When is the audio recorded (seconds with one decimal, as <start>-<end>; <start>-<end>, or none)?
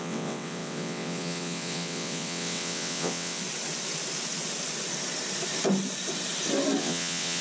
3.4-6.8